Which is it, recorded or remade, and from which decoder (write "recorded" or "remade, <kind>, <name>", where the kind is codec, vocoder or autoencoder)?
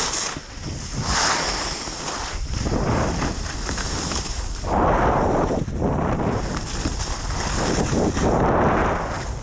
recorded